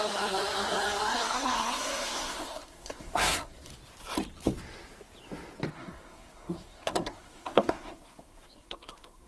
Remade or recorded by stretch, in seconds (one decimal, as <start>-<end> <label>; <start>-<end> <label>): 0.0-3.7 remade; 3.7-5.7 recorded; 5.7-9.3 remade